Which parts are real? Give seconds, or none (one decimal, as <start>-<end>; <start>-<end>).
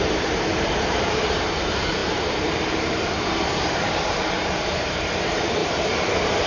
5.6-6.5